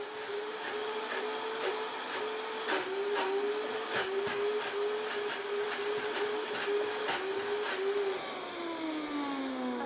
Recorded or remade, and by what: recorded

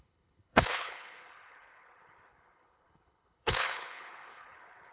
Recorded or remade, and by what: remade, codec, HILCodec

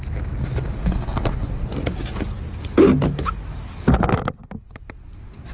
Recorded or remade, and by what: recorded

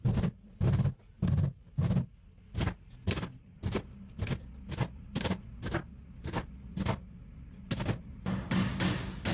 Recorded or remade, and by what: recorded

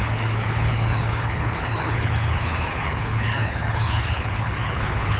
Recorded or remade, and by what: remade, codec, HILCodec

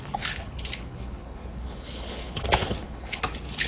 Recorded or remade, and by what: remade, codec, HILCodec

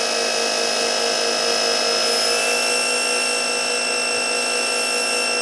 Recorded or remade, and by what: recorded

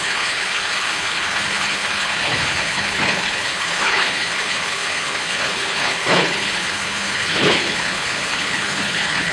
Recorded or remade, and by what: remade, codec, HILCodec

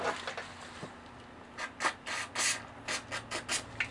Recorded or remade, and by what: recorded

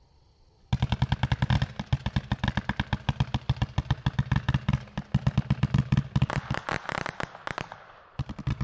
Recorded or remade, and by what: recorded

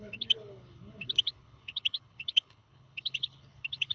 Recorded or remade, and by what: remade, codec, HILCodec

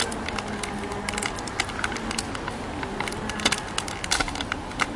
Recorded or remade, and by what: recorded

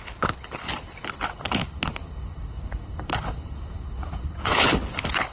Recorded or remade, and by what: remade, codec, HILCodec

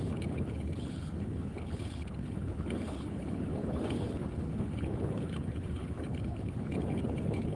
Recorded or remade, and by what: remade, codec, HILCodec